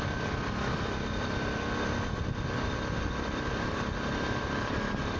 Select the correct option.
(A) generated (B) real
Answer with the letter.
A